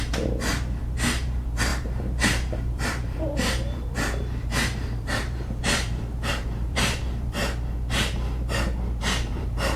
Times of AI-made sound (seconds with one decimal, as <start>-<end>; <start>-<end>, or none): 0.0-7.4; 9.0-9.8